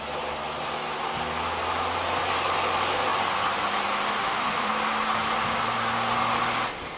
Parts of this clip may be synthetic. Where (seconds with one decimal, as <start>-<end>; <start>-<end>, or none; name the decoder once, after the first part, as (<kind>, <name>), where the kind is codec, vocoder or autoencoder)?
4.2-4.7 (autoencoder, DAC-VAE)